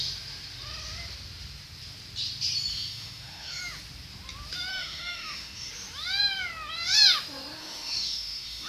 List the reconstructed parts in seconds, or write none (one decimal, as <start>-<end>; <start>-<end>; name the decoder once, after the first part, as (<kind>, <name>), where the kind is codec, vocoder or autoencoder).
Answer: 2.7-3.6 (autoencoder, DAC-VAE); 4.7-5.7; 7.6-8.7